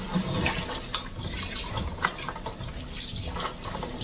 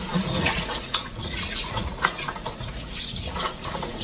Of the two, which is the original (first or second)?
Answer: first